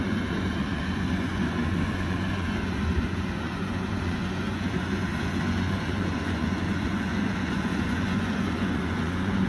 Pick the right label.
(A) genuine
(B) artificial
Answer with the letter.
B